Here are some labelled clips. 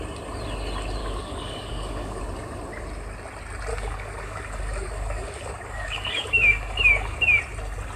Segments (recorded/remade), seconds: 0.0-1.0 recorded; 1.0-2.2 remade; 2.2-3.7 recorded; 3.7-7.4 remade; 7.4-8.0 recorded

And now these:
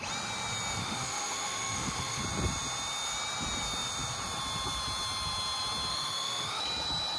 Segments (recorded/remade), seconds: 0.0-0.8 recorded; 0.8-2.2 remade; 2.2-5.9 recorded; 5.9-6.6 remade; 6.6-7.2 recorded

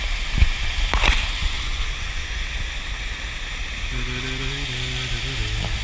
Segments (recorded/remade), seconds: 0.0-1.4 recorded; 1.4-2.4 remade; 2.4-5.8 recorded

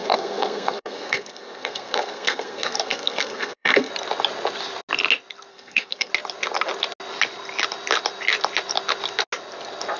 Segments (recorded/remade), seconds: 0.0-3.9 remade; 3.9-5.5 recorded; 5.5-6.1 remade; 6.1-10.0 recorded